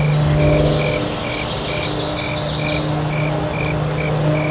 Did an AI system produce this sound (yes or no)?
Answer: no